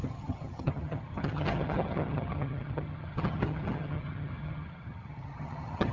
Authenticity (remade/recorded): remade